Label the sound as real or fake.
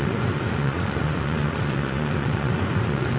fake